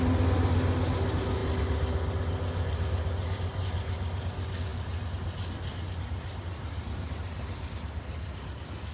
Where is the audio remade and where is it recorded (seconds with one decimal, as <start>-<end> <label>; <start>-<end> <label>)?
0.0-8.9 recorded